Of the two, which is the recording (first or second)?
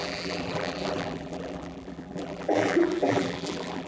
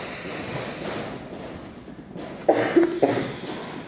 second